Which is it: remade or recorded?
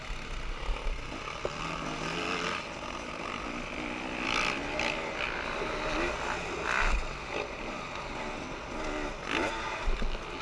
recorded